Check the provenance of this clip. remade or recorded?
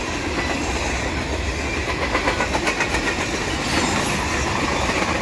recorded